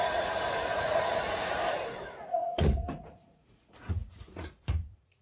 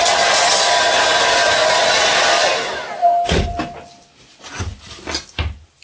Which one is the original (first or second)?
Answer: second